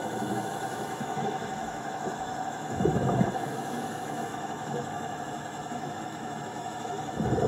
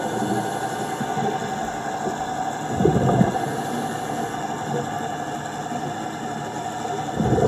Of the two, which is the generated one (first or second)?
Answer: first